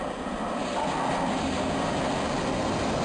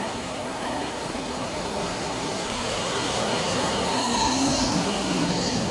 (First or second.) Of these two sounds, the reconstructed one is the second